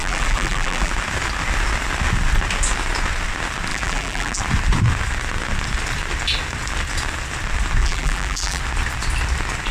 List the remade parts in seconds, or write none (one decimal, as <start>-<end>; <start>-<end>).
0.0-0.9; 3.7-4.4; 7.8-8.6